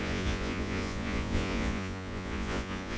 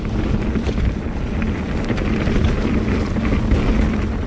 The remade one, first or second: first